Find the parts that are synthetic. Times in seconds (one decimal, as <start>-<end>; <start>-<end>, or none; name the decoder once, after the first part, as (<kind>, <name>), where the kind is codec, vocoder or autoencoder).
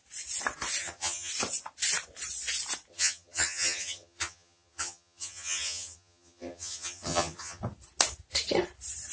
0.8-1.3 (vocoder, HiFi-GAN); 2.9-7.6